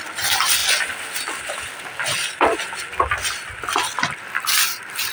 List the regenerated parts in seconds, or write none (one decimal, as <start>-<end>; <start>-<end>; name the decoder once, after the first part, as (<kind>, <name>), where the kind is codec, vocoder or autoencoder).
none